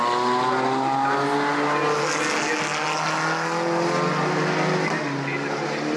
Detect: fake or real real